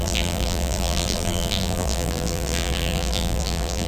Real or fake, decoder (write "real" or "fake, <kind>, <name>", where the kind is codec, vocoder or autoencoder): fake, vocoder, BigVGAN v2